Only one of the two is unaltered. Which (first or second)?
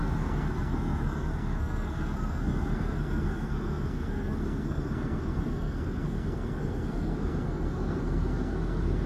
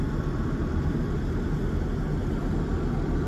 second